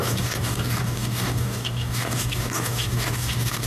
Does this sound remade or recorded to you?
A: remade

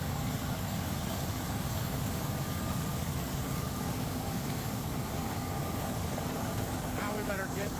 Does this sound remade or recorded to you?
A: remade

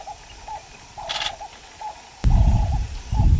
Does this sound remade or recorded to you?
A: recorded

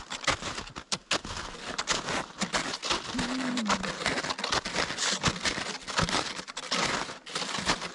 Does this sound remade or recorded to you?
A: recorded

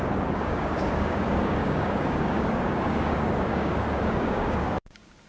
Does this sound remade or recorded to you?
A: remade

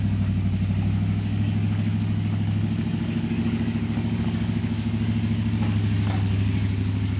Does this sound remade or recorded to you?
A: remade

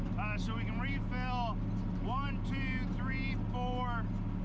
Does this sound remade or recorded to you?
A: recorded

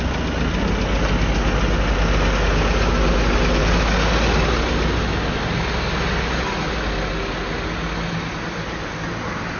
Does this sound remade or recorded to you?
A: recorded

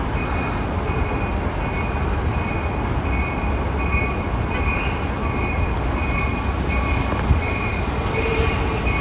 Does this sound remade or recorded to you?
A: recorded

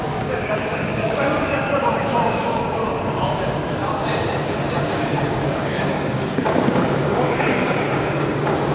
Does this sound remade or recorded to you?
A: remade